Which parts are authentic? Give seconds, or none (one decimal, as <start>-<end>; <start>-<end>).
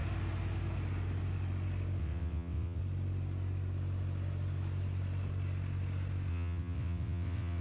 0.0-2.0; 2.8-6.3